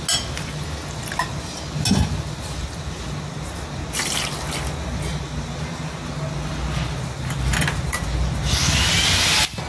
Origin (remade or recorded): recorded